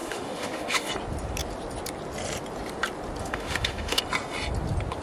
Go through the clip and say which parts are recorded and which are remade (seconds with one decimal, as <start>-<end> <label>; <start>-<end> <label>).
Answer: 0.0-0.9 remade; 0.9-3.2 recorded; 3.2-4.0 remade; 4.0-5.0 recorded